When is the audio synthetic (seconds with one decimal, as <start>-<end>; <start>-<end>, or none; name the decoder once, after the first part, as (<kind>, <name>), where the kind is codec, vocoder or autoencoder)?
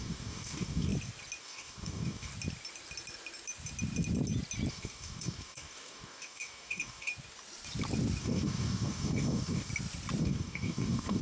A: 0.0-0.9 (codec, DAC); 1.4-2.3; 4.7-7.1; 8.2-9.7; 10.2-11.2